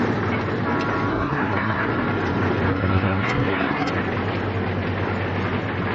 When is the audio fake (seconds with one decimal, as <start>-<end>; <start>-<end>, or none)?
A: 1.1-1.9; 2.7-3.9